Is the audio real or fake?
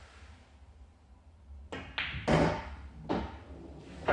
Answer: real